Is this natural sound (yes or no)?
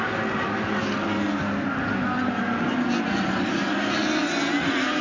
yes